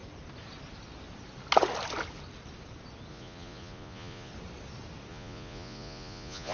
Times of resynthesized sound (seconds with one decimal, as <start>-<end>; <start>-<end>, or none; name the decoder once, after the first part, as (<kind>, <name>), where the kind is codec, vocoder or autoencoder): 3.1-4.3 (vocoder, Vocos); 5.1-6.5